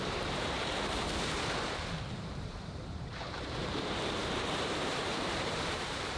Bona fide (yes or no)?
no